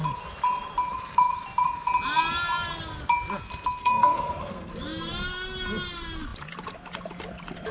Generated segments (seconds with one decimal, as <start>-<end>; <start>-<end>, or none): 3.8-4.7